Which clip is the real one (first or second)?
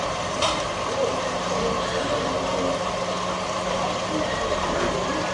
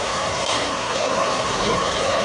first